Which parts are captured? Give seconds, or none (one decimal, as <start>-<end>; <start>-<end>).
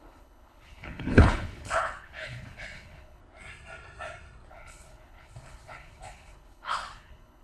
3.2-4.5